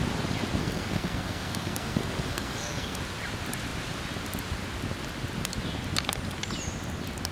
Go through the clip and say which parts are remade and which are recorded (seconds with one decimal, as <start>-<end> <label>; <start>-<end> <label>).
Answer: 0.0-0.6 recorded; 0.6-3.0 remade; 3.0-7.3 recorded